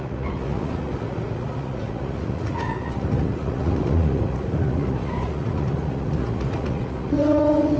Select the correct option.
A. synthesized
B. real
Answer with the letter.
A